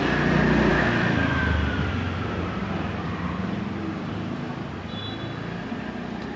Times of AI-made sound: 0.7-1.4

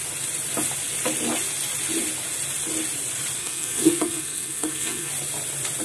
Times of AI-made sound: 3.4-5.1

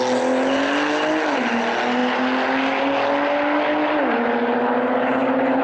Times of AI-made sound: none